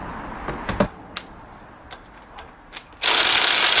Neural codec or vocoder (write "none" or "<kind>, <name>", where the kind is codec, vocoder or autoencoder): none